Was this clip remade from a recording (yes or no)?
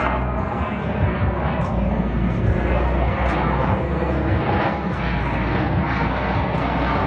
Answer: yes